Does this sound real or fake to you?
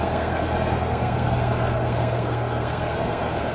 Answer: fake